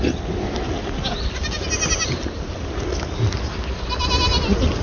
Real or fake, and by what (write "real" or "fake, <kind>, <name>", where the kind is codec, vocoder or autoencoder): real